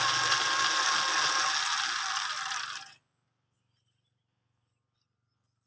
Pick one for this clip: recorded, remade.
recorded